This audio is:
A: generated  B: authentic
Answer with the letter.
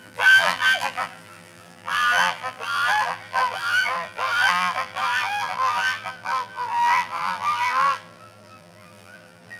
A